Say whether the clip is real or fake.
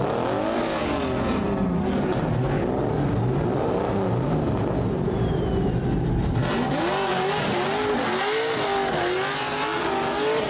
real